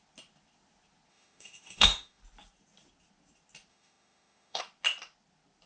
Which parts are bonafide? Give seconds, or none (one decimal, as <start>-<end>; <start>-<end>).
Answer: 0.0-1.1; 2.2-3.7; 4.6-5.7